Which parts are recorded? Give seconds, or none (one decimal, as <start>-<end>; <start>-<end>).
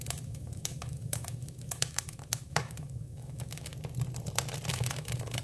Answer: 3.7-4.7